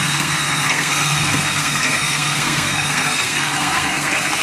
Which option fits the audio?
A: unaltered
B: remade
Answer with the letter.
B